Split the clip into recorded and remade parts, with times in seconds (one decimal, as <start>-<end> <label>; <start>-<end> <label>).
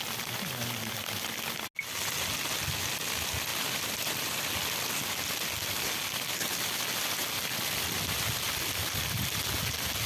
0.0-3.5 recorded; 3.5-4.5 remade; 4.5-10.1 recorded